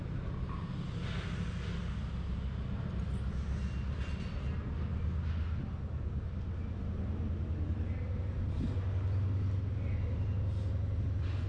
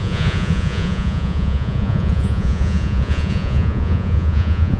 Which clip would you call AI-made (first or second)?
second